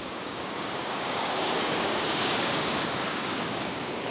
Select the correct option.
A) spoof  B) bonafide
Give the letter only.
A